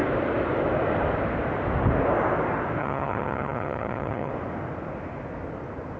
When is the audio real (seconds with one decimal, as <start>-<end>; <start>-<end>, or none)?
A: 0.0-2.8; 4.3-6.0